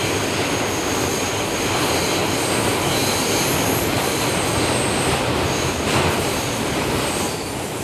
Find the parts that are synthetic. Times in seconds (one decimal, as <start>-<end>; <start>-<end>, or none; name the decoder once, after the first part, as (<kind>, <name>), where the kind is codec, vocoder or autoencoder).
none